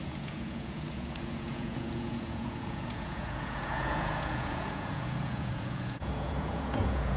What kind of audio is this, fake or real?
fake